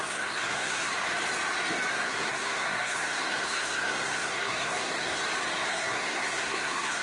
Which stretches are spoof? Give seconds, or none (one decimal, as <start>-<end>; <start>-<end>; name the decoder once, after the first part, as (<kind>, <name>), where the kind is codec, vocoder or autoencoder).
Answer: 0.0-0.9 (codec, SNAC); 1.9-5.2; 5.7-7.0